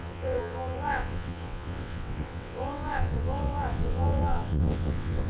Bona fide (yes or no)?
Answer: no